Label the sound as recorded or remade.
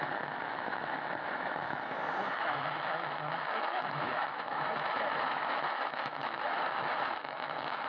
remade